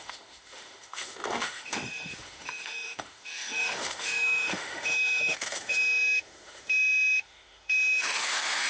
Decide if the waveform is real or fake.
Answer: fake